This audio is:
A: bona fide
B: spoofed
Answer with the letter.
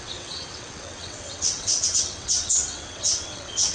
B